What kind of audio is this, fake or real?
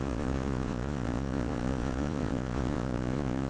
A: fake